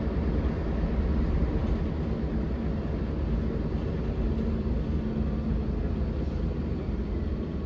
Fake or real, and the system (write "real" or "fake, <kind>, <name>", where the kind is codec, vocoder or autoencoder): real